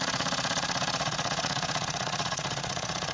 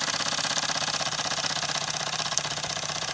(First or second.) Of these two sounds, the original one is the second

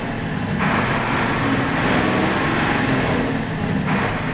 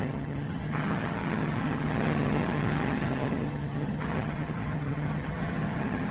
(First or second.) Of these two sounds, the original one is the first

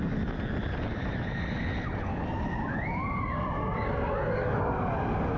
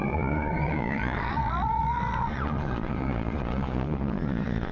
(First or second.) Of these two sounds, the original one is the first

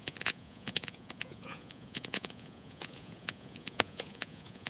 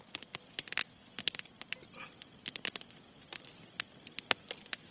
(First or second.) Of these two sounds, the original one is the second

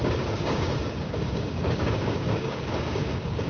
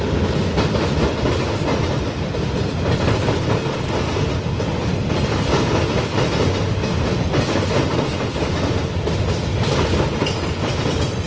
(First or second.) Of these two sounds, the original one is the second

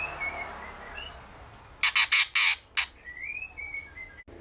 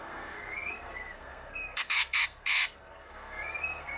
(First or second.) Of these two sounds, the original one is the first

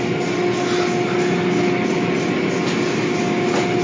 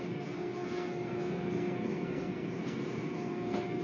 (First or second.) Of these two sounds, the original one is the first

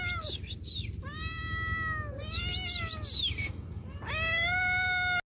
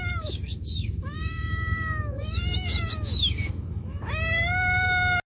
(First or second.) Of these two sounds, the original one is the first